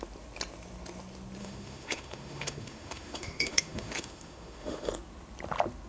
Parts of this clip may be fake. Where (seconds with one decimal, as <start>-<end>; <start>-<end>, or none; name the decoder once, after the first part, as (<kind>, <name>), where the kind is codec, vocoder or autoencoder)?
1.4-4.9 (autoencoder, DAC-VAE)